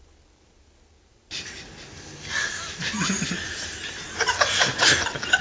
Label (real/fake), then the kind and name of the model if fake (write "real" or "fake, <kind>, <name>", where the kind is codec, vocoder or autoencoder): real